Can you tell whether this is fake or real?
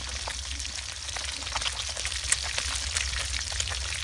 real